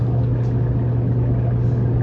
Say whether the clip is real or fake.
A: real